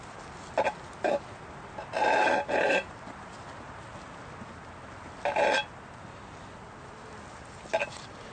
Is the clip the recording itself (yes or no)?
yes